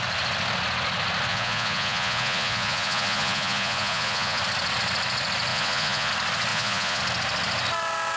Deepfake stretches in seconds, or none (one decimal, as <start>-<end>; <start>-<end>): 1.3-4.4; 5.5-6.1; 6.5-7.0